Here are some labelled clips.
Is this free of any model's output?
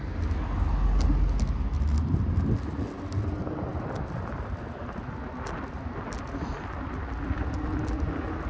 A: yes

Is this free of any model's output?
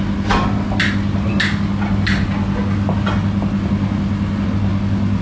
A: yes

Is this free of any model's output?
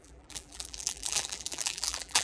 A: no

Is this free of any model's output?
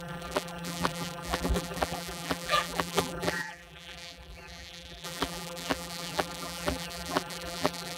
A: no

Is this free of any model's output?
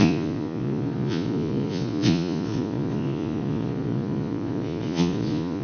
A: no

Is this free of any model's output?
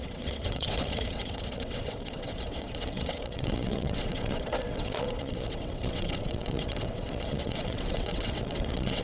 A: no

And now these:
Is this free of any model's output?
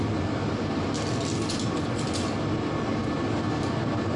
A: yes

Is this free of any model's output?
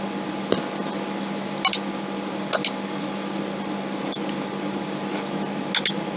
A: yes